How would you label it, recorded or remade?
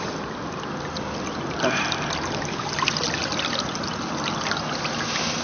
recorded